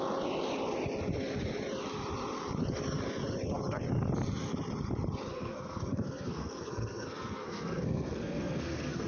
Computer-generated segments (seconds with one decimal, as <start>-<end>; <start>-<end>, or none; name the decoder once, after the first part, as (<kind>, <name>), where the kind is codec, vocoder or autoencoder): 5.3-9.1 (codec, SNAC)